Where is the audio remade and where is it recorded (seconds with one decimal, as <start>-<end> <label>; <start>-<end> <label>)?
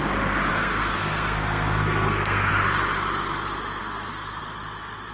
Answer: 0.0-0.5 recorded; 0.5-2.5 remade; 2.5-3.8 recorded; 3.8-4.4 remade; 4.4-5.1 recorded